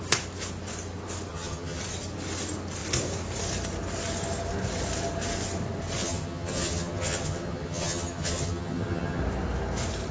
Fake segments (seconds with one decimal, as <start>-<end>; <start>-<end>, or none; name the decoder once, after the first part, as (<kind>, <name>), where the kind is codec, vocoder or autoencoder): 1.3-1.8 (vocoder, HiFi-GAN); 6.0-9.2